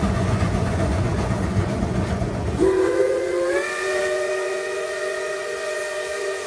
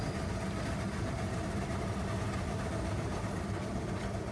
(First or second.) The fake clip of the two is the first